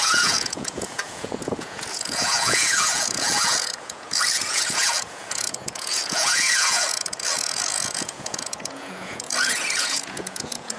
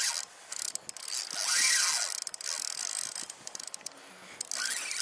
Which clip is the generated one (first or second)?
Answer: first